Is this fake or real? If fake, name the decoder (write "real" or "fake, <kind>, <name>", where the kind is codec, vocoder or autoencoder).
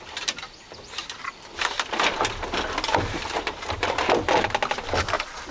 real